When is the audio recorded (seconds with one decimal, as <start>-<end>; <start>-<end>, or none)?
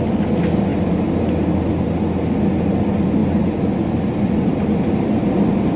0.0-5.8